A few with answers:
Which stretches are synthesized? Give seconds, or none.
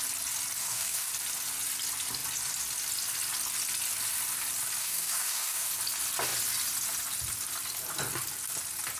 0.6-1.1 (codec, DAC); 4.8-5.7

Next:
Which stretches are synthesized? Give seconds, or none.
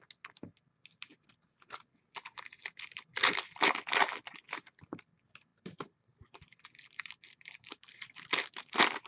5.5-8.1 (vocoder, BigVGAN v2)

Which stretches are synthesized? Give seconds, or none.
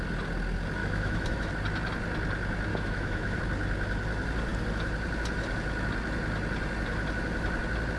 0.8-1.5 (autoencoder, DAC-VAE); 2.7-3.4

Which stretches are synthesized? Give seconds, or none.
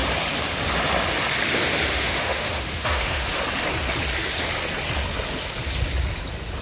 1.9-3.4 (autoencoder, DAC-VAE)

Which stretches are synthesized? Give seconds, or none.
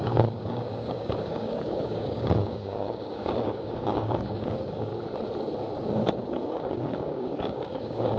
0.0-4.9 (codec, DAC); 5.8-8.2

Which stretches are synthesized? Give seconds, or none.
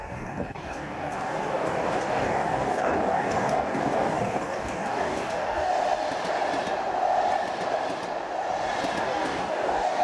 0.0-5.7 (codec, DAC); 9.0-10.0